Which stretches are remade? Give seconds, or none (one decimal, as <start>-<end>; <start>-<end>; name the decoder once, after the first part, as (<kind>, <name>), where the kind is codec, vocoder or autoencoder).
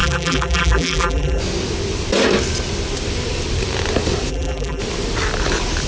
0.0-1.4 (vocoder, BigVGAN v2); 4.3-4.8